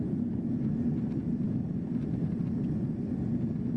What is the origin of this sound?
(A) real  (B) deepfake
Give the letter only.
A